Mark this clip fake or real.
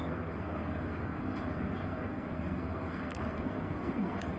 fake